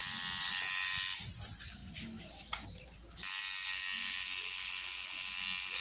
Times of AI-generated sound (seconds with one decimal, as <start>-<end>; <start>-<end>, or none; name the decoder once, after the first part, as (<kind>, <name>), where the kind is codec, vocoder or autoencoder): none